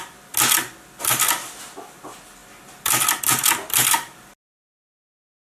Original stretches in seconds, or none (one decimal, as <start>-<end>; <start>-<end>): 0.0-5.5